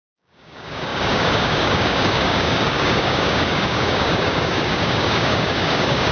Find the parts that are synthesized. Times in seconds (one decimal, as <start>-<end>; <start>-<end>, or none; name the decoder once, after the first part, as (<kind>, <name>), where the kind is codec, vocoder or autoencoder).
0.0-6.1 (codec, DAC)